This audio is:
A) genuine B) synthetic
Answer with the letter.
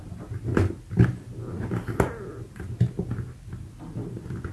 A